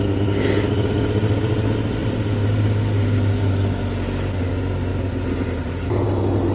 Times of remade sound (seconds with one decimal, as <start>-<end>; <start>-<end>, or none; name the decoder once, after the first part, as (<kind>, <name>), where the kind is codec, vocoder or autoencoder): none